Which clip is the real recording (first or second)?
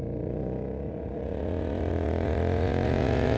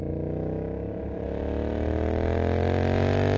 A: second